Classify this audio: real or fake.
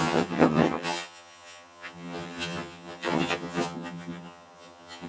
fake